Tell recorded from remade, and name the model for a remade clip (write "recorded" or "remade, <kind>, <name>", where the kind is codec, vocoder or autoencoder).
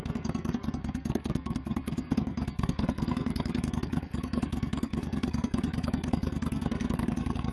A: remade, codec, SNAC